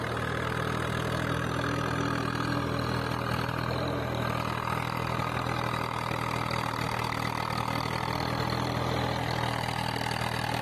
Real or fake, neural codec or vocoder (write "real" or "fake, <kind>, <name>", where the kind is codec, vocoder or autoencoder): real